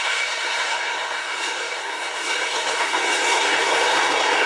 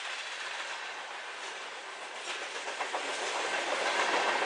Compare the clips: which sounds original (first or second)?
second